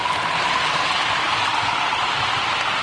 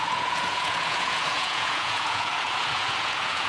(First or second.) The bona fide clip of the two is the first